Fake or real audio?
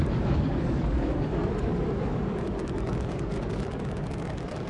fake